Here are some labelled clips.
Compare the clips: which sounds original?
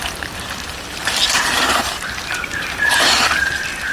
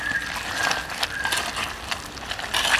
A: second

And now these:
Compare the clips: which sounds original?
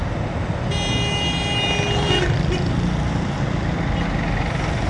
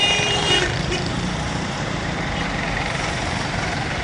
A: first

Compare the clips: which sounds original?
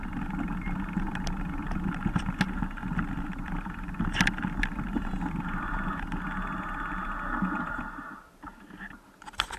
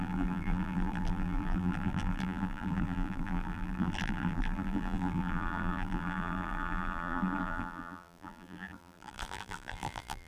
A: first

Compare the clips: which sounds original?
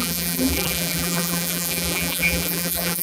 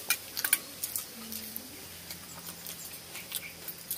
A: second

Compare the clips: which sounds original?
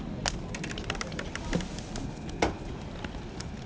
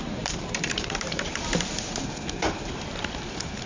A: first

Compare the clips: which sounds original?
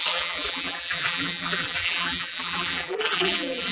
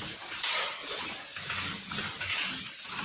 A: second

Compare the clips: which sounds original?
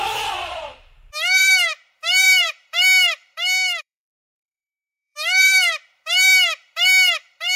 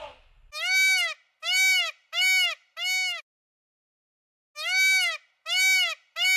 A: second